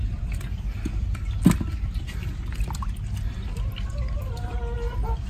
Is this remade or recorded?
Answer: recorded